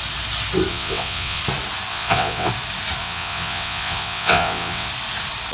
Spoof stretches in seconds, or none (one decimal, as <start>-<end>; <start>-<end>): 0.7-1.4; 1.9-2.5; 3.0-4.9